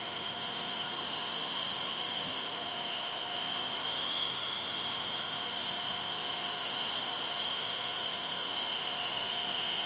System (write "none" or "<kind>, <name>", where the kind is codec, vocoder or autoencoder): autoencoder, DAC-VAE